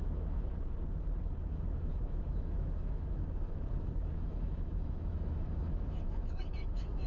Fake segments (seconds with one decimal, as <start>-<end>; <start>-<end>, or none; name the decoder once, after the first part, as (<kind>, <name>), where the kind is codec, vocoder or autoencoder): 0.0-0.5 (autoencoder, DAC-VAE); 1.4-7.1